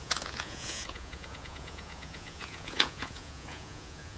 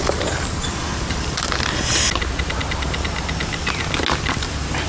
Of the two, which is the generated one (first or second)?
first